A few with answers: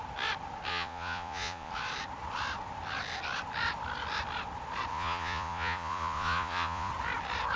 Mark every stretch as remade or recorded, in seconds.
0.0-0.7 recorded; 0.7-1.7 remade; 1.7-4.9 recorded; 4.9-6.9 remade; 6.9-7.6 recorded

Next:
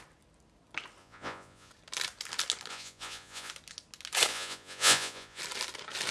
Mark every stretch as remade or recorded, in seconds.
0.0-1.0 recorded; 1.0-1.7 remade; 1.7-2.7 recorded; 2.7-3.5 remade; 3.5-4.3 recorded; 4.3-5.4 remade; 5.4-6.1 recorded

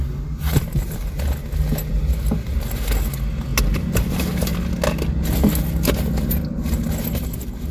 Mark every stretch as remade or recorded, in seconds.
0.0-7.7 recorded